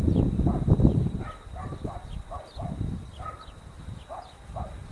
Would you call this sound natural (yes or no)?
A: yes